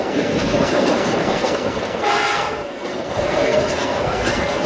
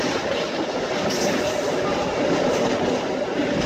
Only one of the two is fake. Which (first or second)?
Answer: first